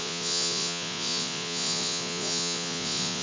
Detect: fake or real fake